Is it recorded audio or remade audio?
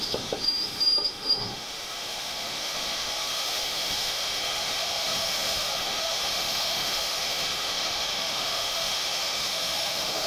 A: remade